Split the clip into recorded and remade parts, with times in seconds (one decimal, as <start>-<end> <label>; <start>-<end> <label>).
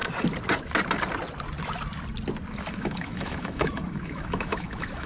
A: 0.0-2.7 recorded; 2.7-5.1 remade